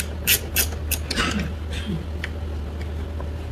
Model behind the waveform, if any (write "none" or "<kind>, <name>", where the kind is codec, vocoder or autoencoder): none